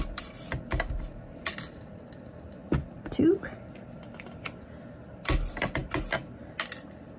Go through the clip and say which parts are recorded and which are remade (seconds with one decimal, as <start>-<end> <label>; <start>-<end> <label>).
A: 0.0-2.6 remade; 2.6-5.1 recorded; 5.1-5.8 remade; 5.8-6.8 recorded; 6.8-7.2 remade